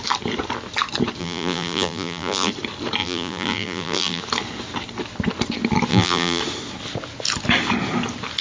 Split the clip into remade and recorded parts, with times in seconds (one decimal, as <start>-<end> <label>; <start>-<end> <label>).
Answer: 0.0-1.2 recorded; 1.2-2.5 remade; 2.5-3.0 recorded; 3.0-4.2 remade; 4.2-5.9 recorded; 5.9-6.4 remade; 6.4-8.4 recorded